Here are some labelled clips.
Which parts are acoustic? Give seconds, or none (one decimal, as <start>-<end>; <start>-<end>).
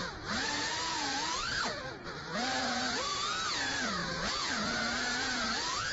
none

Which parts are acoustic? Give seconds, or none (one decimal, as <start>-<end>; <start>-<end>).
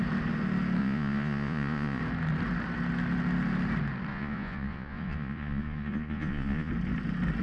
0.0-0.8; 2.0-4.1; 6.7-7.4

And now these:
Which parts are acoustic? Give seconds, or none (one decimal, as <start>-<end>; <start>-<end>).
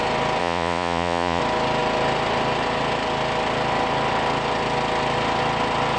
0.0-0.4; 1.4-6.0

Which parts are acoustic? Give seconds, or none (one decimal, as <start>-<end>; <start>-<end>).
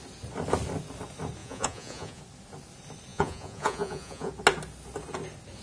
0.0-1.4; 2.2-3.1; 4.3-5.6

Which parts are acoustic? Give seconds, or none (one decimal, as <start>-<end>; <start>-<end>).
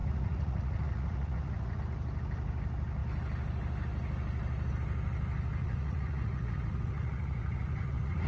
1.8-5.6